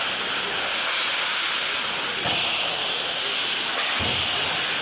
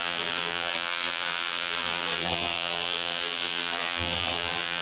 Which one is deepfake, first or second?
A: second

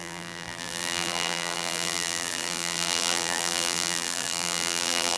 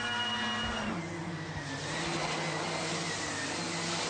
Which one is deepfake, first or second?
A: first